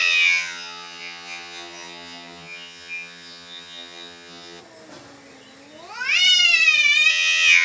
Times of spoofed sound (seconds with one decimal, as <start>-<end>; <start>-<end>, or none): 0.0-4.6; 7.1-7.6